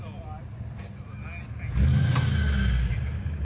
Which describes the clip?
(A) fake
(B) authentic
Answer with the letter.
B